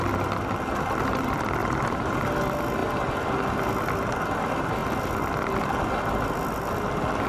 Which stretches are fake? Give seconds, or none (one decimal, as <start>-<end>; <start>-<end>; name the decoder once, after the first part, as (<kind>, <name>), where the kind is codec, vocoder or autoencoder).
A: 1.6-2.2 (vocoder, BigVGAN v2)